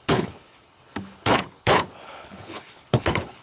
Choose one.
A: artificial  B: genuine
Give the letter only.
A